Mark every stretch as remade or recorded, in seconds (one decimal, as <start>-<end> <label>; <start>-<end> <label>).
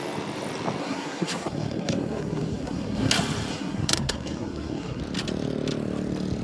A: 0.0-0.8 recorded; 0.8-3.1 remade; 3.1-3.5 recorded; 3.5-5.0 remade; 5.0-6.4 recorded